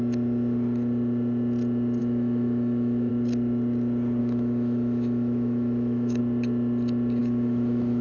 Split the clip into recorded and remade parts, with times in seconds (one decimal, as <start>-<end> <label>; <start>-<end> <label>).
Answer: 0.0-2.0 recorded; 2.0-3.1 remade; 3.1-4.2 recorded; 4.2-6.2 remade; 6.2-7.2 recorded; 7.2-8.0 remade